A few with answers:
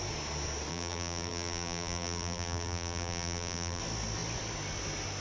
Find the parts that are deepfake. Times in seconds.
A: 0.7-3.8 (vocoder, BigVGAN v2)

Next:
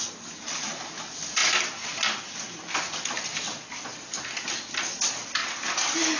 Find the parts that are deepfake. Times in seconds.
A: none

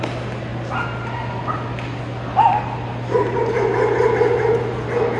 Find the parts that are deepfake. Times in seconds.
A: none

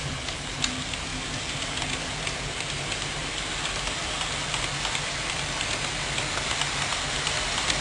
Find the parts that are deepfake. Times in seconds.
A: 0.0-0.6 (codec, HILCodec)

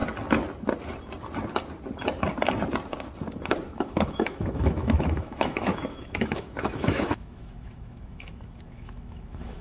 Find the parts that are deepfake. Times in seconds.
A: 3.7-9.6 (autoencoder, DAC-VAE)

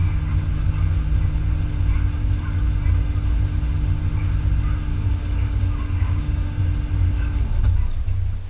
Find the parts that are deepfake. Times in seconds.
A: 0.0-0.5 (codec, DAC); 4.9-6.6